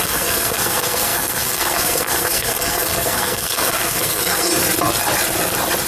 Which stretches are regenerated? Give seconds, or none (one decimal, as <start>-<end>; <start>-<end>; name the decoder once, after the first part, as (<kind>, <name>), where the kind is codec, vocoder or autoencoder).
0.0-4.5 (codec, SNAC)